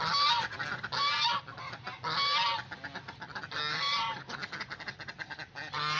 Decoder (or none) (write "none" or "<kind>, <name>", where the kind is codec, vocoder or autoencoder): none